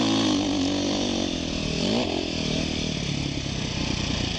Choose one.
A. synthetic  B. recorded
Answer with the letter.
B